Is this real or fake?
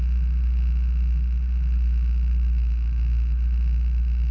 real